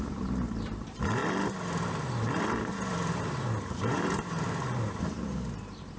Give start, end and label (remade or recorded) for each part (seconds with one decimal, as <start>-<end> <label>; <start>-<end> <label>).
0.0-1.2 remade; 1.2-2.4 recorded; 2.4-6.0 remade